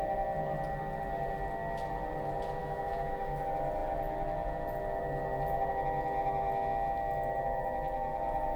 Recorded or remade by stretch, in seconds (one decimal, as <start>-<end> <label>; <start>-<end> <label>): 0.0-2.6 recorded; 2.6-3.4 remade; 3.4-8.6 recorded